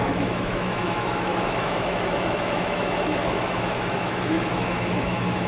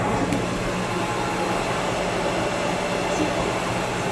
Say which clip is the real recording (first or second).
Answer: second